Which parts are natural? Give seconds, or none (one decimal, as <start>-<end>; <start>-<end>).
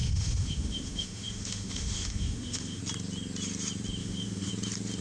2.8-4.0; 4.5-5.0